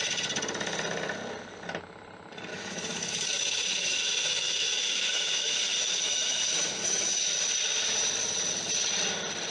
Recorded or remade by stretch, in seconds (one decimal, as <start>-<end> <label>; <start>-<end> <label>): 0.0-2.5 recorded; 2.5-7.3 remade; 7.3-9.5 recorded